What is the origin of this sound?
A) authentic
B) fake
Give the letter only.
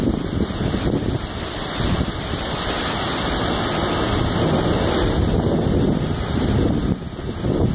A